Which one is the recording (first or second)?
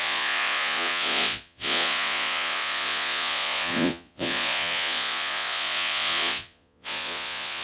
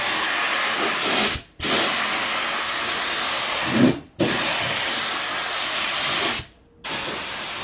second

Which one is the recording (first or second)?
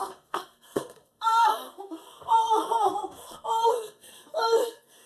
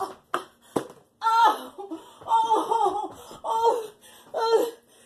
second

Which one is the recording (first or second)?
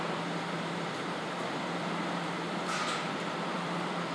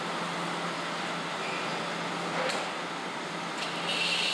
second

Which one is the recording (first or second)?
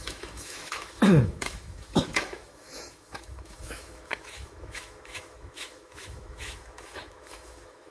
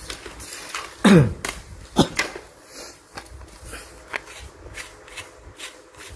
second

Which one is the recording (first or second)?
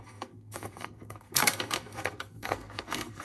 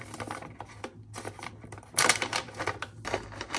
second